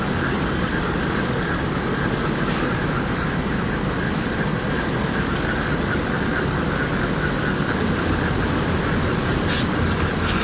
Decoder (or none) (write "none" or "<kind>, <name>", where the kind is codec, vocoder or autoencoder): none